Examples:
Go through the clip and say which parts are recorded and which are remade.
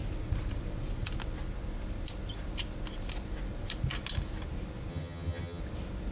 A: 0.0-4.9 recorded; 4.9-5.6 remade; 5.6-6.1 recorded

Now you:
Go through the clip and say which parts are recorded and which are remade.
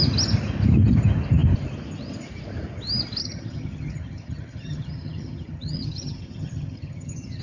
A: 0.0-3.2 recorded; 3.2-7.4 remade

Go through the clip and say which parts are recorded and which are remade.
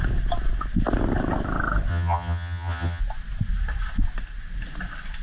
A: 0.0-1.9 recorded; 1.9-3.0 remade; 3.0-5.2 recorded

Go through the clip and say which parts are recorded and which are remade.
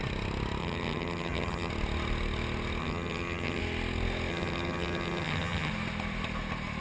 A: 0.0-0.6 recorded; 0.6-1.7 remade; 1.7-2.8 recorded; 2.8-3.6 remade; 3.6-4.3 recorded; 4.3-5.7 remade; 5.7-6.8 recorded